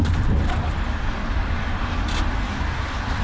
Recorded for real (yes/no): yes